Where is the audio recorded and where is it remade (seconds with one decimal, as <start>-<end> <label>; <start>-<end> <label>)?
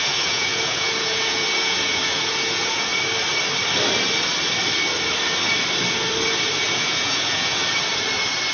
0.0-2.9 remade; 2.9-6.6 recorded; 6.6-7.6 remade; 7.6-8.5 recorded